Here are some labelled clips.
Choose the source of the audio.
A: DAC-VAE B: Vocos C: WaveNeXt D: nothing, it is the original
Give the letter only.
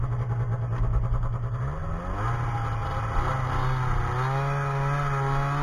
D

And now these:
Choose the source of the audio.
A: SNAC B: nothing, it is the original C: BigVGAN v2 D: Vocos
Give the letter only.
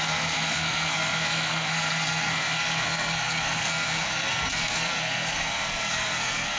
A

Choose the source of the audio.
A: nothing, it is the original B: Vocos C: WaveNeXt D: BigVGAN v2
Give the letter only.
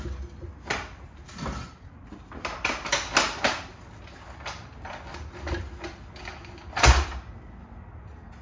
A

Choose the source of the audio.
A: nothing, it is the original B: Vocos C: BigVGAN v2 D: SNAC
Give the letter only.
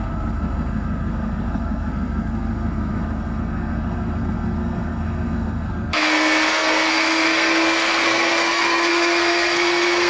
D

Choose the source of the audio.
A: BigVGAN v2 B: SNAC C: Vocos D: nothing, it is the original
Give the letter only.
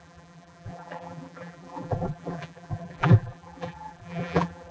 A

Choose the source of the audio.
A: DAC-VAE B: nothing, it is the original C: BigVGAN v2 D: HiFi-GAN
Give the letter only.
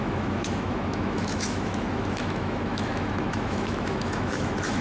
A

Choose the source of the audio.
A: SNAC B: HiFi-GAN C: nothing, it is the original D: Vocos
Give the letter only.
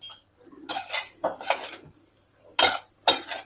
C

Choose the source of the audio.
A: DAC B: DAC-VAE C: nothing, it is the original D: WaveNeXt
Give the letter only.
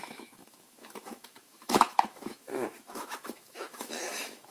B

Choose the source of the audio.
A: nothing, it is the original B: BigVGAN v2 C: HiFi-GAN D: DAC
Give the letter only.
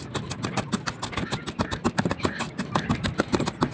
A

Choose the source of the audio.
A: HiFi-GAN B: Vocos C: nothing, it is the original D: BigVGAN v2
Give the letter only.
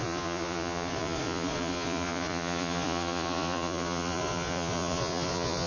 B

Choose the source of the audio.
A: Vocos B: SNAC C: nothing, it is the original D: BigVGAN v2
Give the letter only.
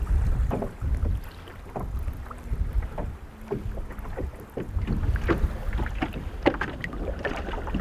C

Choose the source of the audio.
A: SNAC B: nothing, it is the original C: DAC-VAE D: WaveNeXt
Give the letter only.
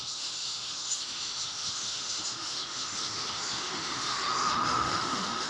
C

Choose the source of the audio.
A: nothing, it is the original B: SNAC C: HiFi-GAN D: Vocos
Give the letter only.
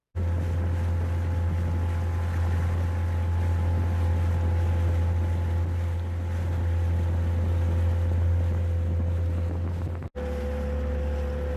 A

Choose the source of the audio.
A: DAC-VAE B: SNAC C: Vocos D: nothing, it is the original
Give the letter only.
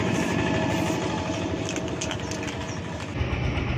D